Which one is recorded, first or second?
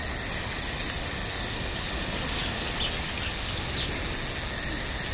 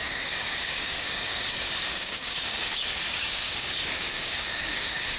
first